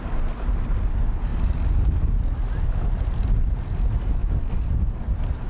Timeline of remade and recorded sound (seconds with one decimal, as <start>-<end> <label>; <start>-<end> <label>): 0.0-5.5 recorded